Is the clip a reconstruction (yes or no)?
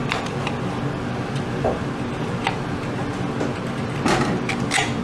no